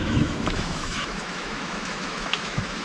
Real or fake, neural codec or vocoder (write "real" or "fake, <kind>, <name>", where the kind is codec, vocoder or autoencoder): fake, autoencoder, DAC-VAE